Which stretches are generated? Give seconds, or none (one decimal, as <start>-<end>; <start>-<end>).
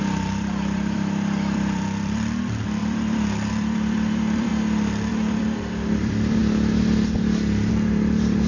0.0-4.5; 5.1-6.4; 7.7-8.5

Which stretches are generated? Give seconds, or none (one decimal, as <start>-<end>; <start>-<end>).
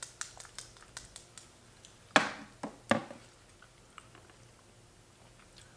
none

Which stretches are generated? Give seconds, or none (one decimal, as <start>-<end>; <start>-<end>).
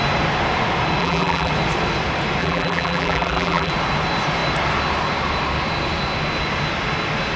1.0-1.5; 2.4-3.7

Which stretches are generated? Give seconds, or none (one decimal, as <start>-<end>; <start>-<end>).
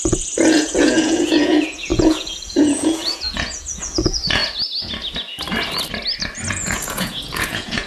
0.0-4.4; 6.5-7.9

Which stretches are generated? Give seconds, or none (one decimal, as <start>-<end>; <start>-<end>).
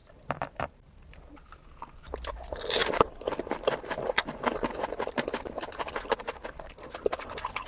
0.0-1.8; 2.8-6.7